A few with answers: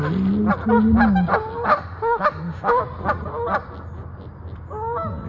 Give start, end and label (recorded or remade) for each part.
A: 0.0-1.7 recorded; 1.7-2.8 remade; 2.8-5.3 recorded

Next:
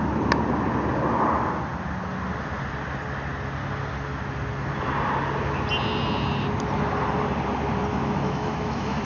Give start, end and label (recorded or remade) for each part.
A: 0.0-7.9 recorded; 7.9-9.0 remade